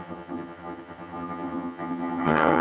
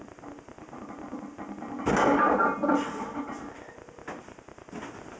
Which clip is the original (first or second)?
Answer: second